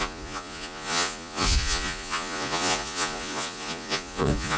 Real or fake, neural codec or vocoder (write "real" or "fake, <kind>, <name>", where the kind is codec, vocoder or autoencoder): fake, vocoder, Vocos